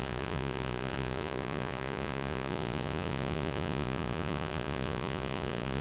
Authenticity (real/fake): fake